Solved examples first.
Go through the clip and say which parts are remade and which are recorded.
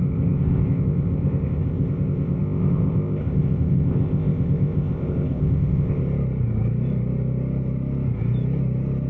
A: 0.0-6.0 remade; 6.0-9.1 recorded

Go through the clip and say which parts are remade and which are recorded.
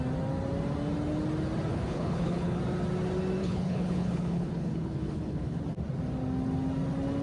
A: 0.0-1.7 recorded; 1.7-2.6 remade; 2.6-3.4 recorded; 3.4-5.6 remade; 5.6-7.2 recorded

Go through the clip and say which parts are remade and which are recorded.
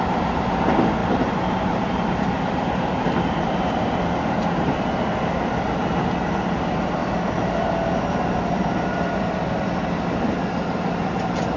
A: 0.0-1.0 recorded; 1.0-4.7 remade; 4.7-11.6 recorded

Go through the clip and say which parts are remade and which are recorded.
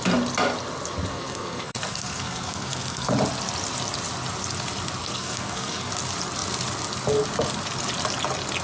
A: 0.0-1.1 recorded; 1.1-3.1 remade; 3.1-5.0 recorded; 5.0-5.9 remade; 5.9-8.6 recorded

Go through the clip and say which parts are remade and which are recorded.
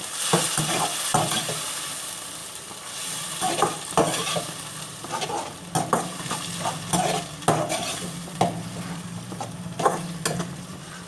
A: 0.0-11.1 recorded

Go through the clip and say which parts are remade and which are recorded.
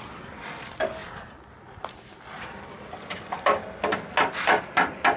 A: 0.0-5.2 recorded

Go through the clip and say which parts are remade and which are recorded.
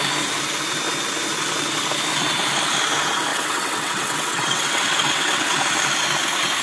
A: 0.0-3.3 recorded; 3.3-5.6 remade; 5.6-6.6 recorded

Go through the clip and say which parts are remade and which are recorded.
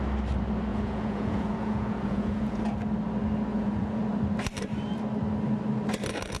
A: 0.0-0.7 recorded; 0.7-2.6 remade; 2.6-3.5 recorded; 3.5-4.0 remade; 4.0-6.4 recorded